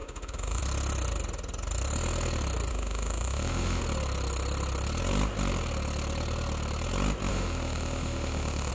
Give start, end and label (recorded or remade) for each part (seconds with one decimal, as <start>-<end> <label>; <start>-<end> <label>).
0.0-0.6 remade; 0.6-2.7 recorded; 2.7-3.8 remade; 3.8-7.3 recorded; 7.3-8.7 remade